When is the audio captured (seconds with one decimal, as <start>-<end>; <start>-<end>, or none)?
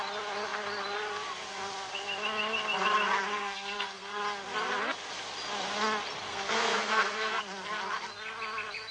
0.0-3.3; 4.2-6.3; 7.4-8.9